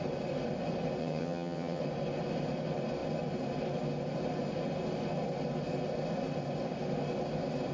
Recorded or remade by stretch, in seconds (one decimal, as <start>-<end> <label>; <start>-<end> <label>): 0.0-1.0 recorded; 1.0-1.8 remade; 1.8-7.7 recorded